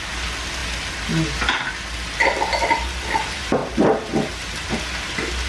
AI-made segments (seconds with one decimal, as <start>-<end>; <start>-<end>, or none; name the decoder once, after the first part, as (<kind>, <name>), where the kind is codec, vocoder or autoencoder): 3.6-4.8 (vocoder, BigVGAN v2)